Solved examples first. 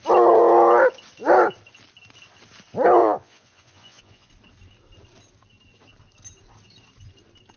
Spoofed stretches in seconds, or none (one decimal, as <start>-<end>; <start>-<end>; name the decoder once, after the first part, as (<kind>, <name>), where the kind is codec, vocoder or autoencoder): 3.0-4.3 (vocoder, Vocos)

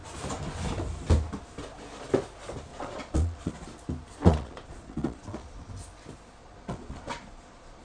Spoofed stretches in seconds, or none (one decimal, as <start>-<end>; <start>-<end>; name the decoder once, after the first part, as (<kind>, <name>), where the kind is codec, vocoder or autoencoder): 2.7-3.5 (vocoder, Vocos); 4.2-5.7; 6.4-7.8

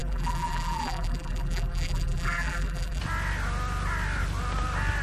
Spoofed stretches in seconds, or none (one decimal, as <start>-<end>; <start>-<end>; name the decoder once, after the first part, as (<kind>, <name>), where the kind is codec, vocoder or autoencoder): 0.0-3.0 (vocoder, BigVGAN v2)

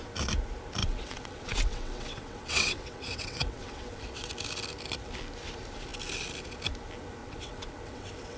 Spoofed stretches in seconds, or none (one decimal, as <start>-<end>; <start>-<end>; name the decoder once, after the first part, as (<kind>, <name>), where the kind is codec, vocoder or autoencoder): 0.8-4.3 (vocoder, WaveNeXt); 7.2-8.4

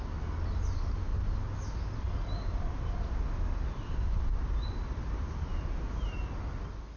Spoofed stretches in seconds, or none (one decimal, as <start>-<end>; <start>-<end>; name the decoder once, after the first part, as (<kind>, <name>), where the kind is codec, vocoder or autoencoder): none

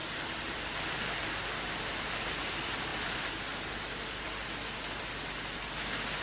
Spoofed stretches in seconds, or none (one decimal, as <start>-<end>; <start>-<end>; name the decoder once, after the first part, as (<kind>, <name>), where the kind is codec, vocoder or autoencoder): none

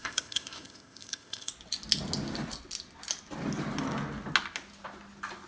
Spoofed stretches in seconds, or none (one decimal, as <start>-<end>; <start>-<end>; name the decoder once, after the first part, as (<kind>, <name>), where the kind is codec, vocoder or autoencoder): 0.0-1.5 (codec, ZipCodec)